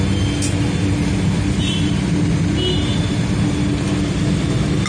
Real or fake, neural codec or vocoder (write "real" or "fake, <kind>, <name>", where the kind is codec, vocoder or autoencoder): real